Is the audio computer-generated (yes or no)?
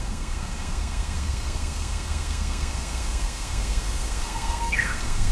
yes